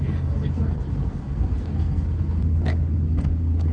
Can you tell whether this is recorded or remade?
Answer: remade